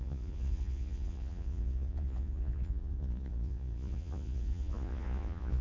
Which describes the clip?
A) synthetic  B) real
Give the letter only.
A